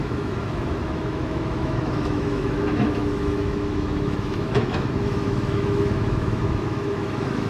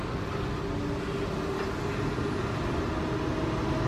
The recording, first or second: second